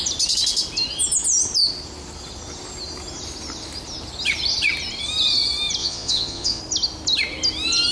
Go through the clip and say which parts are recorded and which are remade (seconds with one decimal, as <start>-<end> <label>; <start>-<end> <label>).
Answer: 0.0-5.8 recorded; 5.8-6.6 remade; 6.6-7.9 recorded